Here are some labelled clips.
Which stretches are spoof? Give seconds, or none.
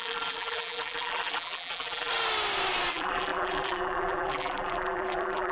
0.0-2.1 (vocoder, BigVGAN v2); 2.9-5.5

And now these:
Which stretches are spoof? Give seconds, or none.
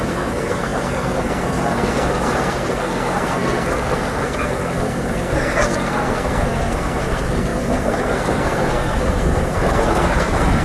0.0-10.6 (codec, SNAC)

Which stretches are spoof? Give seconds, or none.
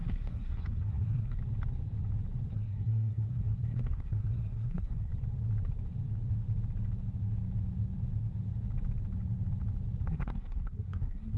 0.0-1.4 (codec, SNAC); 2.5-5.1; 10.1-11.4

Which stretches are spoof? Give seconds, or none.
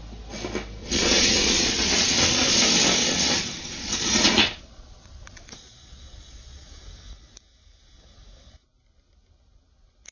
0.8-2.6 (vocoder, Vocos); 3.0-6.8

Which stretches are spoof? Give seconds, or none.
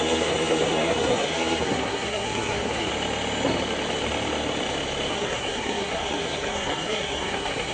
0.0-2.9 (codec, SNAC); 5.1-7.7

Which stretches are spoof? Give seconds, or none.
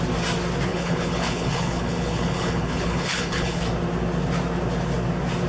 0.7-3.6 (codec, HILCodec)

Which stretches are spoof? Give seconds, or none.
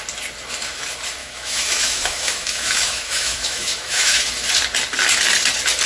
1.2-4.2 (autoencoder, DAC-VAE)